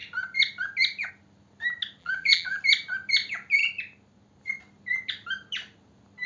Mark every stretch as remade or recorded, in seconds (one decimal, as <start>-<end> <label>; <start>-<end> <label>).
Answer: 0.0-2.0 recorded; 2.0-2.6 remade; 2.6-6.3 recorded